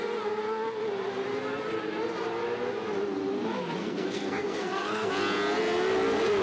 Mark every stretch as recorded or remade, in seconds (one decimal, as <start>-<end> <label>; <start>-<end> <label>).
0.0-3.8 recorded; 3.8-5.1 remade; 5.1-6.4 recorded